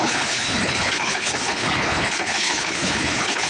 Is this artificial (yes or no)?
yes